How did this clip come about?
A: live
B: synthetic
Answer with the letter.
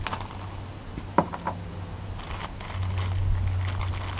A